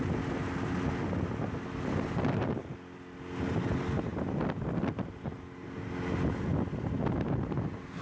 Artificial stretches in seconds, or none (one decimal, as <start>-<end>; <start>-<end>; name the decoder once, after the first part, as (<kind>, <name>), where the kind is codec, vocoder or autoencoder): none